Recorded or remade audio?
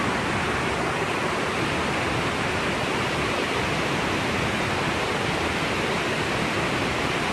recorded